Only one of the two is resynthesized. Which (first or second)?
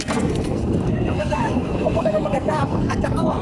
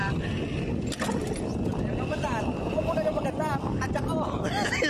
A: first